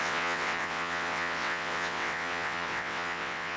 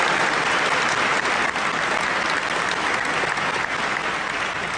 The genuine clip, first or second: second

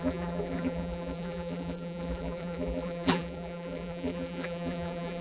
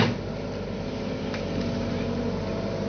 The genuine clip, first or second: second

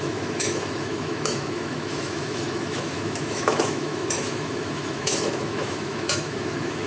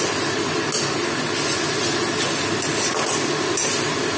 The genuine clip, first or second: second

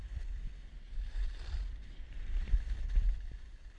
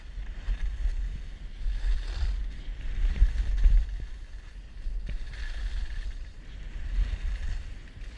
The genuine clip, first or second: second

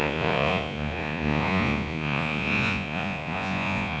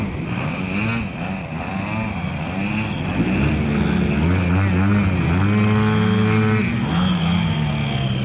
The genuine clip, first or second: second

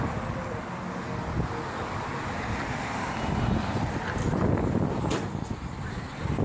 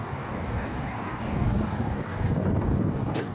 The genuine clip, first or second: first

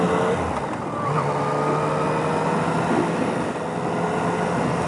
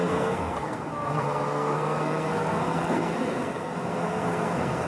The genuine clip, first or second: first